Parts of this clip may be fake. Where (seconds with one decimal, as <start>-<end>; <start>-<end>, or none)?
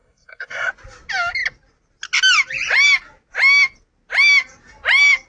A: 0.0-0.7